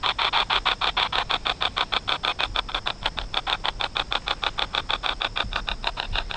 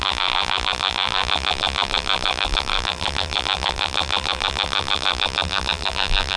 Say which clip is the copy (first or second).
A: second